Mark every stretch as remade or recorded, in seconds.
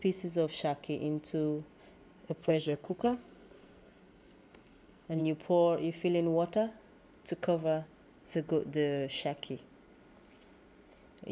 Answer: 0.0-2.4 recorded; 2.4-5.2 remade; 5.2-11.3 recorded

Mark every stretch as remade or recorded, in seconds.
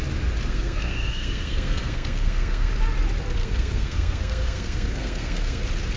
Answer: 0.0-0.5 recorded; 0.5-2.7 remade; 2.7-3.4 recorded; 3.4-5.6 remade; 5.6-6.0 recorded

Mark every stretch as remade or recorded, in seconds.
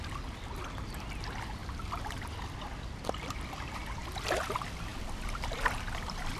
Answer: 0.0-6.4 recorded